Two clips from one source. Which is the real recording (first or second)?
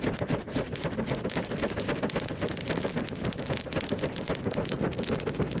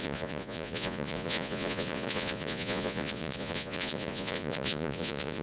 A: first